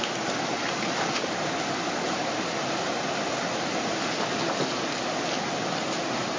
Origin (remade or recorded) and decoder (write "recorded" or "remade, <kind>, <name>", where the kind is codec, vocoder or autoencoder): recorded